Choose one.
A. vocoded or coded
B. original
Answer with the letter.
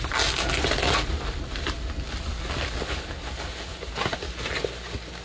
B